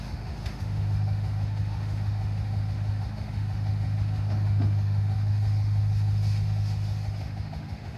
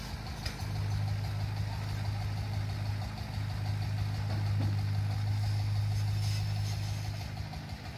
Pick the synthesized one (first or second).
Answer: first